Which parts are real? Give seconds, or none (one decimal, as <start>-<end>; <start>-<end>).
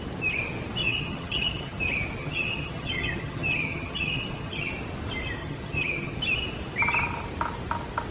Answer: 0.0-0.8; 1.8-2.2; 4.7-5.4; 6.2-8.1